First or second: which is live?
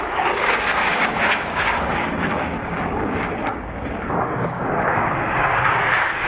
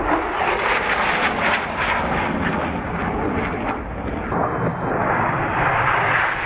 second